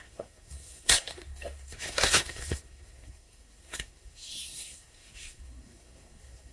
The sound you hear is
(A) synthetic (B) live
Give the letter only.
A